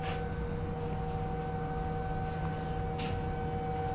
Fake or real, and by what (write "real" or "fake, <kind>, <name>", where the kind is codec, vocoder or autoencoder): real